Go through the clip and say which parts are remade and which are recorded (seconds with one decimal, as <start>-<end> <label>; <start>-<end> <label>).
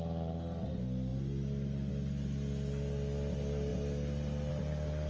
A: 0.0-5.1 recorded